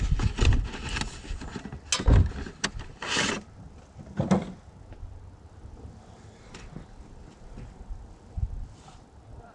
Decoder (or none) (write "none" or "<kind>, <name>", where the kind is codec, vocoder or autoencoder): none